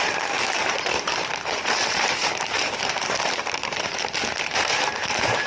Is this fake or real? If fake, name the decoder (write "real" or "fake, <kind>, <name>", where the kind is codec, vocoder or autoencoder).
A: fake, vocoder, BigVGAN v2